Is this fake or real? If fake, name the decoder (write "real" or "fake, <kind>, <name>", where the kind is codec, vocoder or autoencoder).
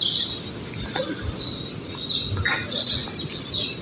real